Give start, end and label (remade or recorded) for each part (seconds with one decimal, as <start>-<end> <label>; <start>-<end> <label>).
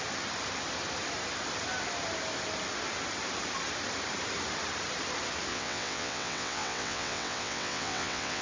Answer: 0.0-5.5 recorded; 5.5-8.4 remade